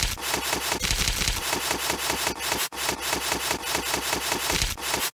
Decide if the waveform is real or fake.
real